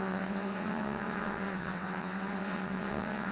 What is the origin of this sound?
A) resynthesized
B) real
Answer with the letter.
A